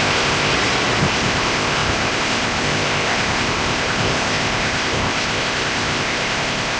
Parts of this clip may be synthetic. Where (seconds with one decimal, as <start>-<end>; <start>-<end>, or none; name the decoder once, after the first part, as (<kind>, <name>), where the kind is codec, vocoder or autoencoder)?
0.0-0.5 (codec, ZipCodec); 1.0-6.8